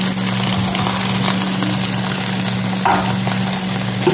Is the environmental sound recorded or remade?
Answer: recorded